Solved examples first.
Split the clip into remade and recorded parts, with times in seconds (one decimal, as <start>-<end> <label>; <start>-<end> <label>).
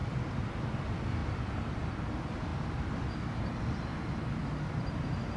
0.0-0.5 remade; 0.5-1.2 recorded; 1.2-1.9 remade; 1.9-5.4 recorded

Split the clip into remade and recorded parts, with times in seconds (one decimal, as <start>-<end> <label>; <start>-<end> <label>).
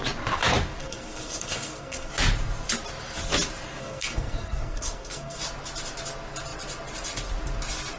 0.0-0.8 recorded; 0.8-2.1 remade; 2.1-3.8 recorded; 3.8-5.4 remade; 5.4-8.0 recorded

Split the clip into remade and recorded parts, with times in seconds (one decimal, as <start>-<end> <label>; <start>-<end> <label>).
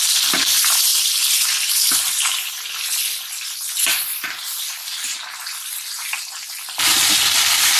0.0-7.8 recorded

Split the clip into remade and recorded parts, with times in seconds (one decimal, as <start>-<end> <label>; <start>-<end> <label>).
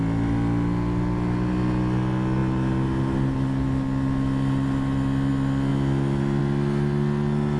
0.0-7.6 recorded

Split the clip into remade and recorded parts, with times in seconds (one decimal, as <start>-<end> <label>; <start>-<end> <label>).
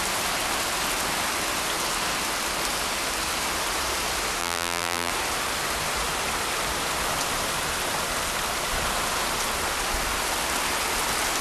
0.0-4.4 recorded; 4.4-5.1 remade; 5.1-11.4 recorded